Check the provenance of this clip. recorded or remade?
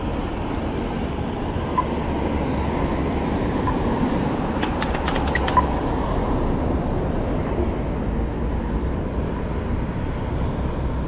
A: recorded